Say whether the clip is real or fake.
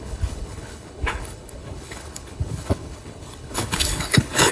fake